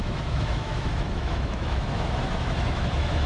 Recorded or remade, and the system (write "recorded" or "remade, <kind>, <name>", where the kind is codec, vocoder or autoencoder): remade, autoencoder, DAC-VAE